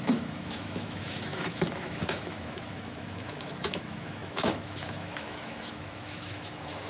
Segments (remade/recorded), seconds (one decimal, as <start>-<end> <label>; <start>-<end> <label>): 0.0-6.9 remade